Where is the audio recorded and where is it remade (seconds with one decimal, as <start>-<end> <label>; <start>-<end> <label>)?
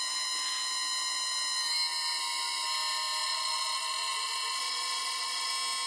0.0-3.2 recorded; 3.2-5.5 remade; 5.5-5.9 recorded